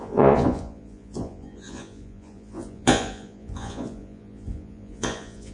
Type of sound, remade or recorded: remade